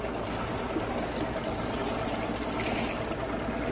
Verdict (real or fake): real